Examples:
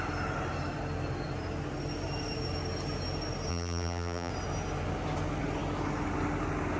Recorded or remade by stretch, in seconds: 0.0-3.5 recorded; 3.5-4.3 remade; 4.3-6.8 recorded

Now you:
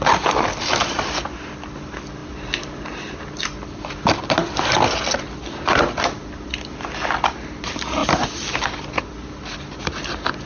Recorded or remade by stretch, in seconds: 0.0-10.5 recorded

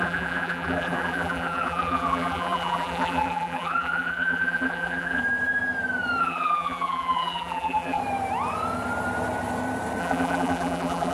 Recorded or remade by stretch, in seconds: 0.0-5.2 remade; 5.2-6.2 recorded; 6.2-8.0 remade; 8.0-10.0 recorded; 10.0-11.1 remade

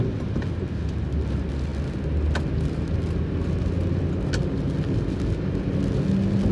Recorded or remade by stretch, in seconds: 0.0-6.5 recorded

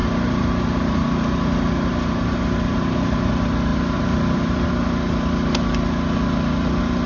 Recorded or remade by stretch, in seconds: 0.0-3.3 remade; 3.3-3.7 recorded; 3.7-4.7 remade; 4.7-7.1 recorded

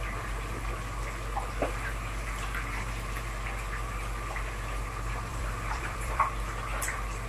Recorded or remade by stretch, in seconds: 0.0-5.3 recorded; 5.3-6.2 remade; 6.2-7.3 recorded

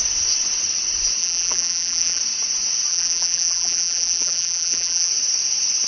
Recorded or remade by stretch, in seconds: 0.0-1.2 recorded; 1.2-2.2 remade; 2.2-2.9 recorded; 2.9-5.1 remade; 5.1-5.9 recorded